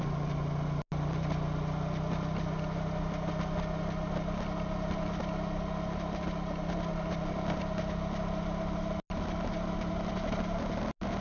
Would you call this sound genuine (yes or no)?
yes